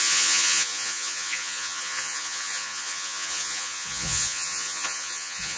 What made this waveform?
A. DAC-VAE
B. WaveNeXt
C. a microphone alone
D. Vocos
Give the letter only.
D